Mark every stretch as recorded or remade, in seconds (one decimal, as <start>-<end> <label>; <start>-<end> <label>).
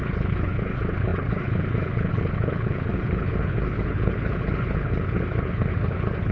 0.0-6.3 remade